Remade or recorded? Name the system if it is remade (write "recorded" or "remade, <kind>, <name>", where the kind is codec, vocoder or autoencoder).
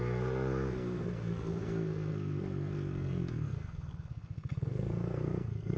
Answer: remade, codec, SNAC